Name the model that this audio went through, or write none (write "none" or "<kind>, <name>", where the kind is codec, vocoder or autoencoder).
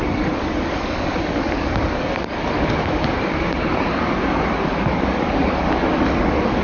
codec, DAC